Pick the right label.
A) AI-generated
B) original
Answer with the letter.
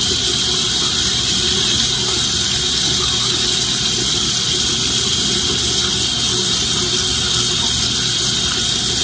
B